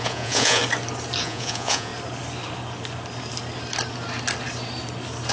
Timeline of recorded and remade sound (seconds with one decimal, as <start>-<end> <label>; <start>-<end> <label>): 0.0-0.6 remade; 0.6-1.2 recorded; 1.2-1.9 remade; 1.9-5.3 recorded

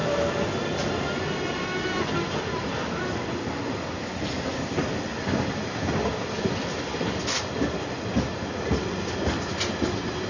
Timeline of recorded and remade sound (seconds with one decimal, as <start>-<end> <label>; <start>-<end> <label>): 0.0-10.3 recorded

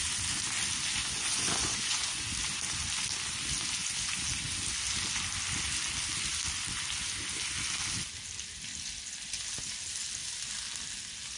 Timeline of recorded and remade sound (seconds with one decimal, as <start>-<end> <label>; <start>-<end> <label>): 0.0-1.0 recorded; 1.0-2.3 remade; 2.3-11.4 recorded

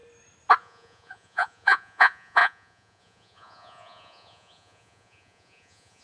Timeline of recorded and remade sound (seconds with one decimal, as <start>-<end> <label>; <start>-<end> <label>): 0.0-0.6 recorded; 0.6-6.0 remade

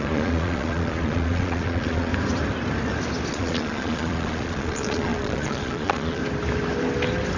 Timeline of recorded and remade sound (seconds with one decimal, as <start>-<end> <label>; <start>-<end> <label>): 0.0-2.1 remade; 2.1-3.3 recorded; 3.3-6.2 remade; 6.2-7.4 recorded

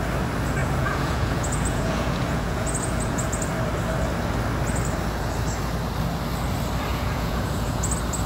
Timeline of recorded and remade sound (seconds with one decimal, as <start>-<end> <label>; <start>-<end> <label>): 0.0-0.6 recorded; 0.6-3.4 remade; 3.4-6.9 recorded; 6.9-7.9 remade; 7.9-8.3 recorded

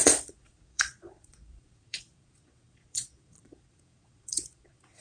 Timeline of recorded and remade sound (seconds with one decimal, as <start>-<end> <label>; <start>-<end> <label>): 0.0-5.0 remade

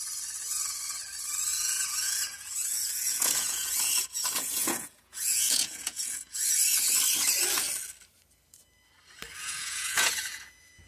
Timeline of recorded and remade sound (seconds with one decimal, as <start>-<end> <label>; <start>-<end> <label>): 0.0-1.5 recorded; 1.5-6.4 remade; 6.4-9.4 recorded; 9.4-10.9 remade